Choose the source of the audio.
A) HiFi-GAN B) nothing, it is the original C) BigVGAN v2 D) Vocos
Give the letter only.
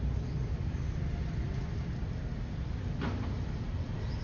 B